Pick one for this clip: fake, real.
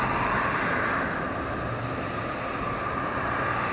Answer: real